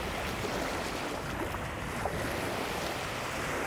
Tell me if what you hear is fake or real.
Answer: real